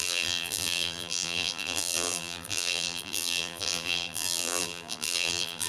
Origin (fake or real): fake